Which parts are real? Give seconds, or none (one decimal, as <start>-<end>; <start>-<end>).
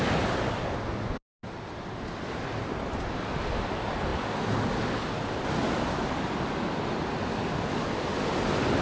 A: 0.0-8.8